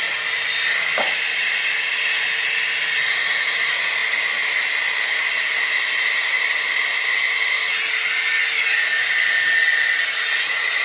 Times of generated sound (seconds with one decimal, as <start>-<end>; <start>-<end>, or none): none